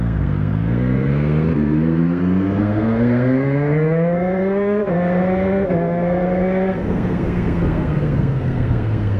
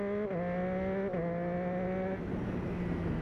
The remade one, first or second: first